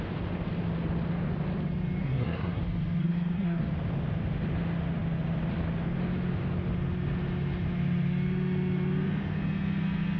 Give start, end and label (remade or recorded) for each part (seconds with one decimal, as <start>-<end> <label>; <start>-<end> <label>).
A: 0.0-2.0 recorded; 2.0-2.6 remade; 2.6-3.0 recorded; 3.0-3.6 remade; 3.6-10.2 recorded